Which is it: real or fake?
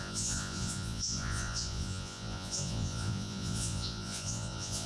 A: fake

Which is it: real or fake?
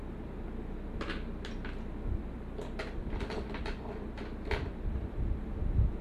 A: real